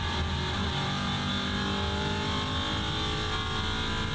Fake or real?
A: real